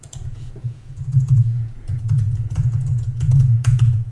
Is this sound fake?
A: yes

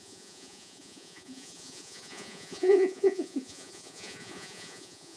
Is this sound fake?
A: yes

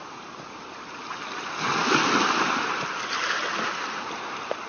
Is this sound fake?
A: no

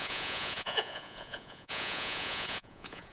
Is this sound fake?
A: yes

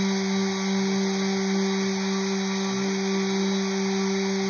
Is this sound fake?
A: no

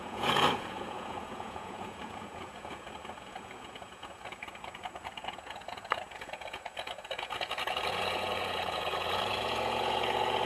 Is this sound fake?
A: yes